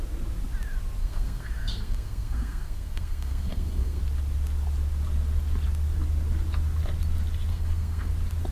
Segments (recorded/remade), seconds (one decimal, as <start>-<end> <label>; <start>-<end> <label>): 0.0-1.0 recorded; 1.0-4.0 remade; 4.0-7.5 recorded; 7.5-8.1 remade; 8.1-8.5 recorded